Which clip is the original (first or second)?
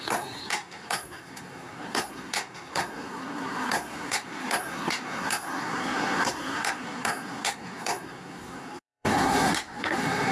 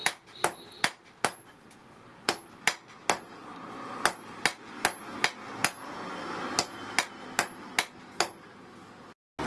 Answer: second